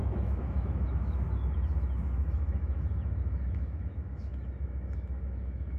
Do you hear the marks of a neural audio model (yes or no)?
yes